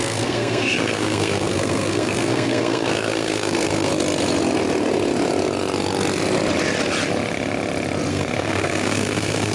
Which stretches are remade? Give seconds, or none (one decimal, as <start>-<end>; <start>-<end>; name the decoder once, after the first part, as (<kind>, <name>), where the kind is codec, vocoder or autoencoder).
0.0-3.9 (codec, SNAC); 8.1-9.5